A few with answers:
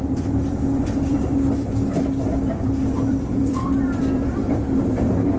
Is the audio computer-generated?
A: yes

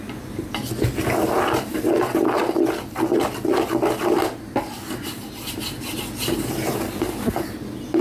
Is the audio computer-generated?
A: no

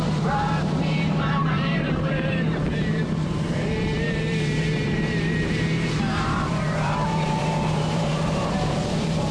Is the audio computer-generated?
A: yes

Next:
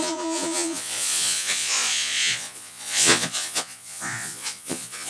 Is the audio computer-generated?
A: yes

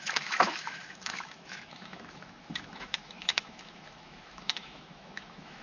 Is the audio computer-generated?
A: yes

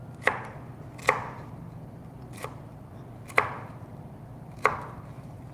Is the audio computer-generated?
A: yes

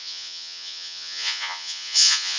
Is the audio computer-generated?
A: yes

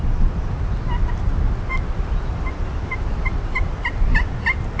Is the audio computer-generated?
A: no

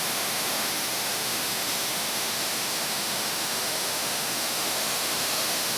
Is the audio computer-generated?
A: yes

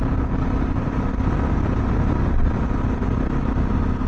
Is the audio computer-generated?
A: no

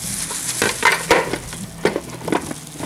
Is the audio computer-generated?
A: no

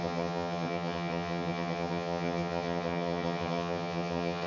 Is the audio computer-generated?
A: yes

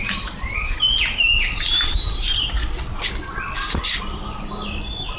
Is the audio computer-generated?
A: no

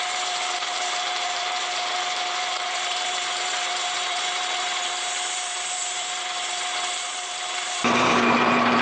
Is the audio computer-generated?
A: yes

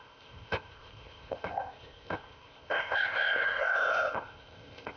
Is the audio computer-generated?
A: yes